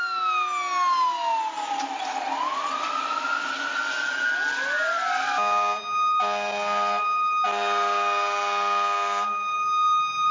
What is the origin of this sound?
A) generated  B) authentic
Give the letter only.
B